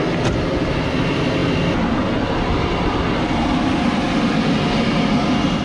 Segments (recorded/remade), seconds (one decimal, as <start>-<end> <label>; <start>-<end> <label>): 0.0-5.6 recorded